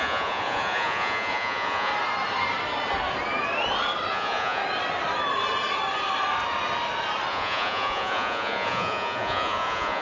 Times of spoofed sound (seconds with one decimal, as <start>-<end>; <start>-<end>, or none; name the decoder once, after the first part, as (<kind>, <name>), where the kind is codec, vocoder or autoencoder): 0.0-1.9 (vocoder, Vocos); 4.1-4.6; 7.3-10.0